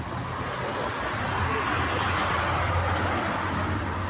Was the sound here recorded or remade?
recorded